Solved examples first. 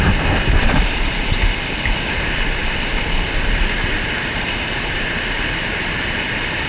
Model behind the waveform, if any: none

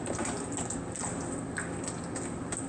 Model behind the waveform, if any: none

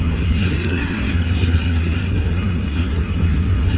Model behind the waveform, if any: codec, SNAC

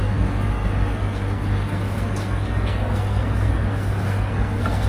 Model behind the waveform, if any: codec, SNAC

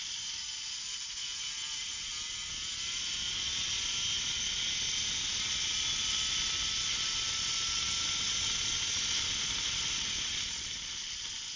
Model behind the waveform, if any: none